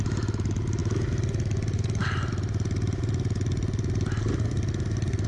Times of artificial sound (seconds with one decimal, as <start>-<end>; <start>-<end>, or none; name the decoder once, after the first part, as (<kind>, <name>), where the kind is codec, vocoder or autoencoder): none